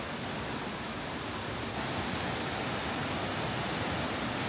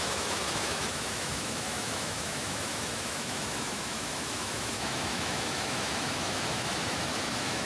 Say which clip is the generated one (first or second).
second